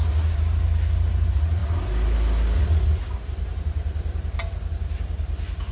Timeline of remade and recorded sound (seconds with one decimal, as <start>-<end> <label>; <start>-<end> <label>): 0.0-5.7 recorded